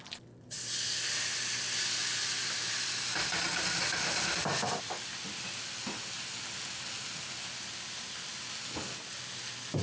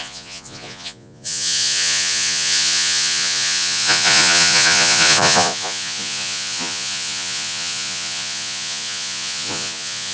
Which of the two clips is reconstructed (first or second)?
second